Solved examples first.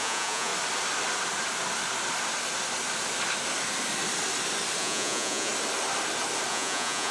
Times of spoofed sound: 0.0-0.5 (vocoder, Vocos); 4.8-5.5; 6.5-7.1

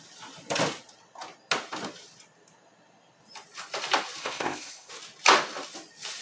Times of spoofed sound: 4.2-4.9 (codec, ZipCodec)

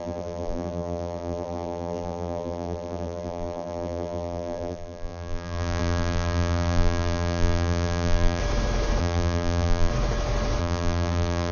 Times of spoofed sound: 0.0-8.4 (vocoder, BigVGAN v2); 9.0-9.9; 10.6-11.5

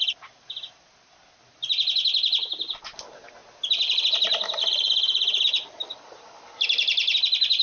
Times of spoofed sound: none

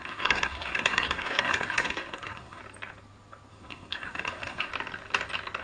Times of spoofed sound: 0.0-2.6 (codec, SNAC); 3.5-4.7